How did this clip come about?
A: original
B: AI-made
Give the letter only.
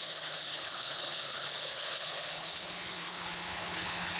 B